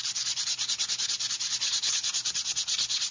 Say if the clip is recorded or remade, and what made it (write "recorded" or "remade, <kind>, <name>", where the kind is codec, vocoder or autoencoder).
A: recorded